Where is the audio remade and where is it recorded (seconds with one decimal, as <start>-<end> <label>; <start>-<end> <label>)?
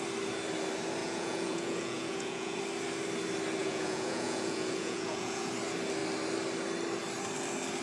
0.0-1.0 recorded; 1.0-2.6 remade; 2.6-3.6 recorded; 3.6-5.5 remade; 5.5-7.8 recorded